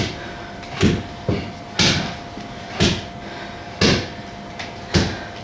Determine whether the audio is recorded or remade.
recorded